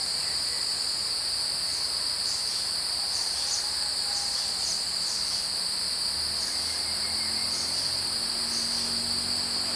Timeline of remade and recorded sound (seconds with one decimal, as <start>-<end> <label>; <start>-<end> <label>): 0.0-9.8 recorded